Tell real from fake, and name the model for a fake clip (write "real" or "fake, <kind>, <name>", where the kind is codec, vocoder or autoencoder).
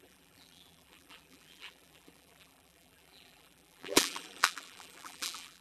fake, vocoder, BigVGAN v2